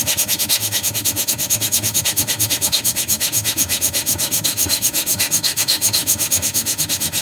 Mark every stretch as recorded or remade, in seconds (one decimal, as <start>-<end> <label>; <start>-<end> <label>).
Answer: 0.0-7.2 remade